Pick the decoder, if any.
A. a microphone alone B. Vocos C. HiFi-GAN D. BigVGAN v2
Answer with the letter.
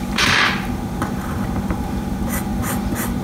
D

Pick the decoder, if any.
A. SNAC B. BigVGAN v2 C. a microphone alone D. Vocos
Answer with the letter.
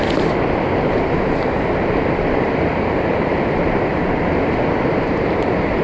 B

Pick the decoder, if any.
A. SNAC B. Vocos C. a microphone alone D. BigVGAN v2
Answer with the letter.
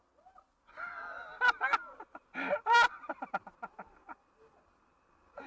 C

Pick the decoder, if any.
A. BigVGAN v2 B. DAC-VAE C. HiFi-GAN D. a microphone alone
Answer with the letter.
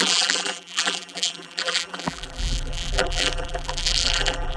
A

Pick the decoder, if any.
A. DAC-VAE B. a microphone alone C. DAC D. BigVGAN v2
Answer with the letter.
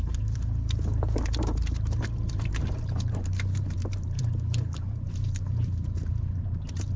D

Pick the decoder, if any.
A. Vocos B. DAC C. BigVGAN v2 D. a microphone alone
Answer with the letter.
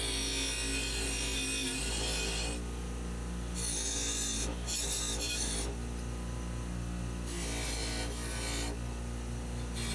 D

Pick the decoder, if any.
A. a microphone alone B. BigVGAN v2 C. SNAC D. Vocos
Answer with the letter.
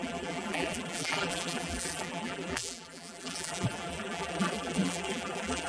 B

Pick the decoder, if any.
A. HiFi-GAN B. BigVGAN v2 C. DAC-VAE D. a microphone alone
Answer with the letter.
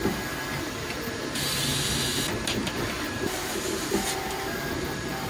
B